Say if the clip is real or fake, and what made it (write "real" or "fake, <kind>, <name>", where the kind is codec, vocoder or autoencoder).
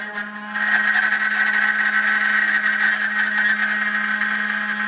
real